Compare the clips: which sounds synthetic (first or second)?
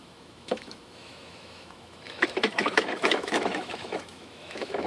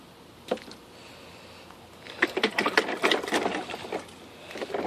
first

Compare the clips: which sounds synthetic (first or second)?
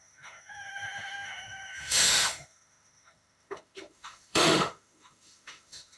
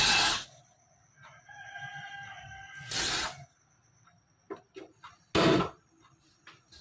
first